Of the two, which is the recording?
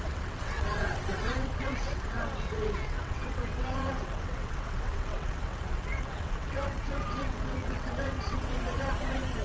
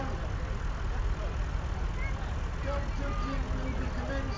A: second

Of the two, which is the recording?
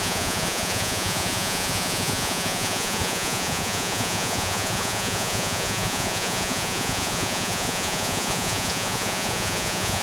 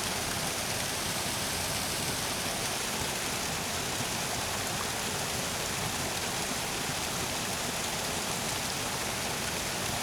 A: second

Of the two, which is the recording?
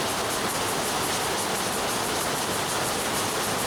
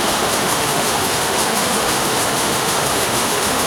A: first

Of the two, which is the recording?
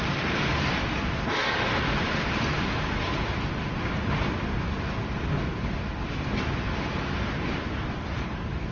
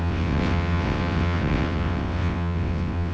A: first